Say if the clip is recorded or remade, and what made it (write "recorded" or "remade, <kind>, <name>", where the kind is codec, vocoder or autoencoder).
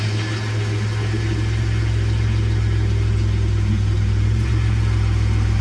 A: recorded